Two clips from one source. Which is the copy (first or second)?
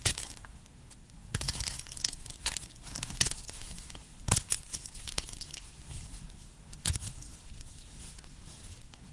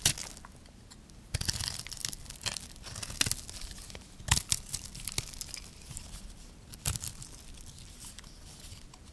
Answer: first